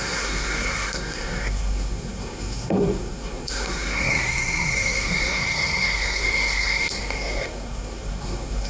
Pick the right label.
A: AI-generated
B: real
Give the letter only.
A